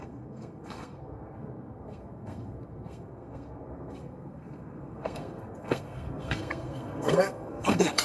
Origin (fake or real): fake